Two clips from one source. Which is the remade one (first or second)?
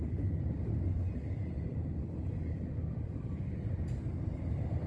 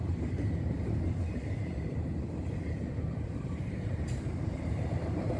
second